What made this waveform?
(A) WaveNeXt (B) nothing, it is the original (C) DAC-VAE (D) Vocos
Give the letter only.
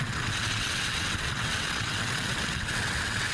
A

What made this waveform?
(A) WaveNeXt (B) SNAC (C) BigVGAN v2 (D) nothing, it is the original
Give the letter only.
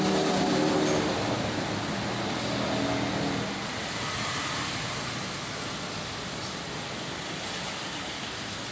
D